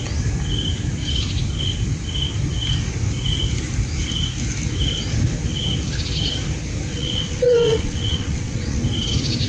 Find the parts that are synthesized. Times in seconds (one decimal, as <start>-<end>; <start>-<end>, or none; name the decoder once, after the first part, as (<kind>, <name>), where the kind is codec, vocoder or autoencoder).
6.9-8.8 (vocoder, WaveNeXt)